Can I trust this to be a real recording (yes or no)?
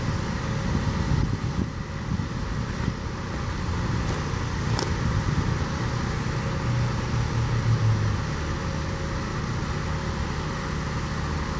yes